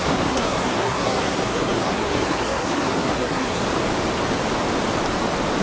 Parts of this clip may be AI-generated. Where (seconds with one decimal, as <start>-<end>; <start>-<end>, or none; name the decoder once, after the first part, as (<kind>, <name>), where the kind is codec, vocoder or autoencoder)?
0.0-3.6 (codec, SNAC)